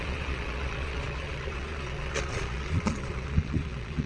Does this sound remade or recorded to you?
remade